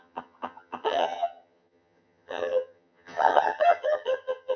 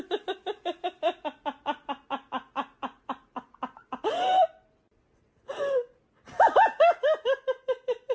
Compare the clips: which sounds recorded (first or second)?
second